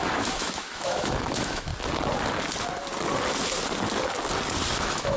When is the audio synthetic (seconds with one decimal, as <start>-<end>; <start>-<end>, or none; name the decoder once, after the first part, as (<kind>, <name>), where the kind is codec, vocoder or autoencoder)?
0.0-1.7 (autoencoder, DAC-VAE); 4.8-5.2

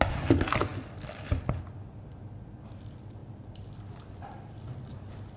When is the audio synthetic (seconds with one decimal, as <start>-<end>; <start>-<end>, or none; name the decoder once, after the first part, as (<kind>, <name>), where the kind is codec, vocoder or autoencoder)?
3.2-4.6 (vocoder, BigVGAN v2)

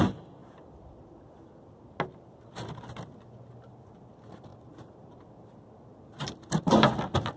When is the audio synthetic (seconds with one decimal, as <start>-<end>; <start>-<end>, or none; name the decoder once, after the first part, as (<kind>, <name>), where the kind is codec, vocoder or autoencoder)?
none